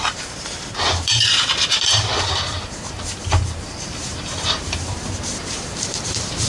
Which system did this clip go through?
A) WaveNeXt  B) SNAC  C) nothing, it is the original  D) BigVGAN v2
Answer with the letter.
D